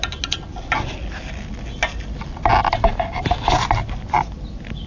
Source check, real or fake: real